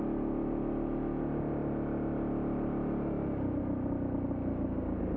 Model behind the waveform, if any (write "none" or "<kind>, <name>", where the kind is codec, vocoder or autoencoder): none